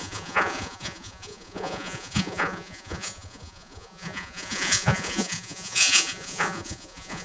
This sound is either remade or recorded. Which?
remade